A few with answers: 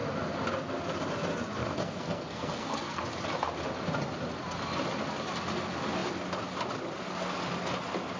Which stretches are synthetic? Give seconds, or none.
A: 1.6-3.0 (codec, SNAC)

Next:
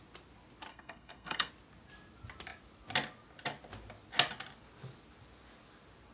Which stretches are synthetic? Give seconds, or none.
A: 0.7-1.5 (codec, SNAC)